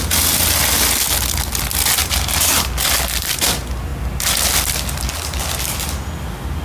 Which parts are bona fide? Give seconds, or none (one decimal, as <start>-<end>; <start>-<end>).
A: 0.0-2.0; 2.7-6.6